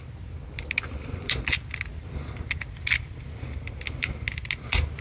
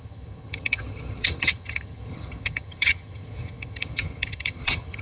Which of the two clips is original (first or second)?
first